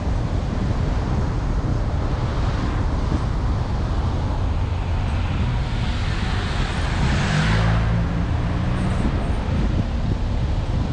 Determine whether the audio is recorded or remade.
recorded